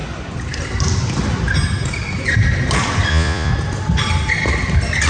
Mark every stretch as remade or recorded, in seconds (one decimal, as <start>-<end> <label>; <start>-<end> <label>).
0.0-3.1 recorded; 3.1-3.5 remade; 3.5-5.1 recorded